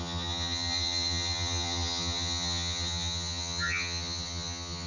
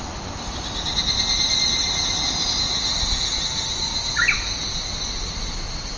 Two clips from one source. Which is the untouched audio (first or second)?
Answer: second